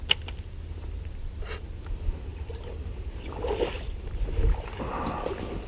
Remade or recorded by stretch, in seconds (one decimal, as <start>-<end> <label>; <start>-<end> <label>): 0.0-5.7 recorded